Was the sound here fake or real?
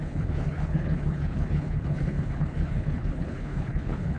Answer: fake